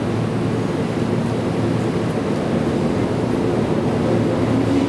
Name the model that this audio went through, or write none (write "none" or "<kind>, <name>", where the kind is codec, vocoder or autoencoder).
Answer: none